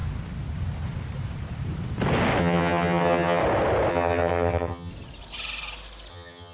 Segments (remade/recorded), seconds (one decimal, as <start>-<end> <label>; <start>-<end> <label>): 0.0-2.4 recorded; 2.4-3.4 remade; 3.4-3.9 recorded; 3.9-4.9 remade; 4.9-6.1 recorded; 6.1-6.5 remade